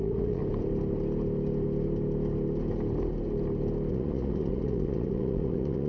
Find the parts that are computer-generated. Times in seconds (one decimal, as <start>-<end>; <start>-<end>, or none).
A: 0.0-0.4; 3.9-5.9